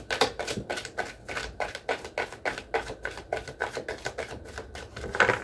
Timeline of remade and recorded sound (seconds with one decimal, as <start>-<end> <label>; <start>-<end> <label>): 0.0-5.4 recorded